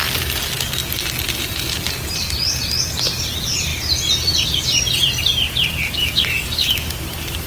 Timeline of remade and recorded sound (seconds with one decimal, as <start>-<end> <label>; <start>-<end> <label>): 0.0-6.0 recorded; 6.0-6.9 remade; 6.9-7.5 recorded